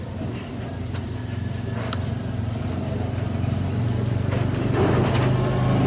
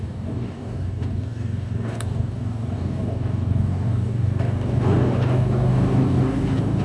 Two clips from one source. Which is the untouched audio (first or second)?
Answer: first